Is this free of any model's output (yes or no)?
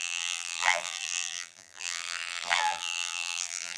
no